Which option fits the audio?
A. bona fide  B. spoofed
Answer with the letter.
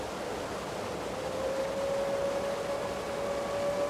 A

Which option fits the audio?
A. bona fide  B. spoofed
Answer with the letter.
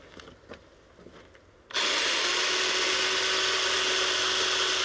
A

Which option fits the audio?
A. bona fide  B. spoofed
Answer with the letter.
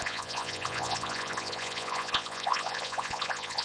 B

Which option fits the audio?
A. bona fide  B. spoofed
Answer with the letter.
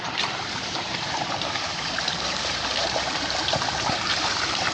B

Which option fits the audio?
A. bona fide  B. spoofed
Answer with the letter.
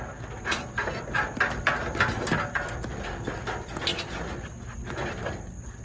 A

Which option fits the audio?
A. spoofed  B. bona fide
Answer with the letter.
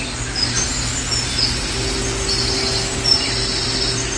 B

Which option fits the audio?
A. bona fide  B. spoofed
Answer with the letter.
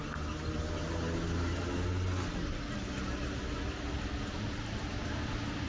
A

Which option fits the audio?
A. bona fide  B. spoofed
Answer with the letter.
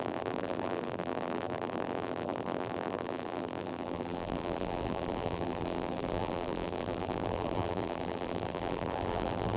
B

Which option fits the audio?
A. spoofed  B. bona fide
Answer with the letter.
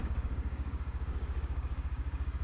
A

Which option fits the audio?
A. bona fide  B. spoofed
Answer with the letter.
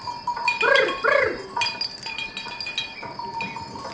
A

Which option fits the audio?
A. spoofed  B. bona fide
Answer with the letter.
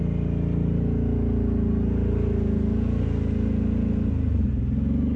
B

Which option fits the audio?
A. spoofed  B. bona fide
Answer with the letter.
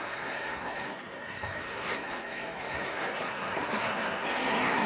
A